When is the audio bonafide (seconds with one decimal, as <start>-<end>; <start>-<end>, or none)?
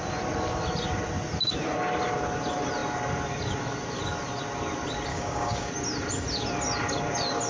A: 0.0-5.1; 5.7-7.5